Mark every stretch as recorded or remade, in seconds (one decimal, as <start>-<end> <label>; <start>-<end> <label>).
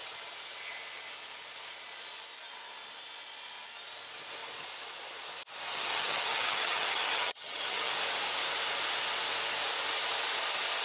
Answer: 0.0-5.7 recorded; 5.7-7.9 remade; 7.9-10.8 recorded